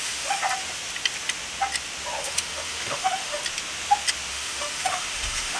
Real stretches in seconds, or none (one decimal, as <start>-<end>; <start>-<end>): 0.4-2.2; 3.4-4.3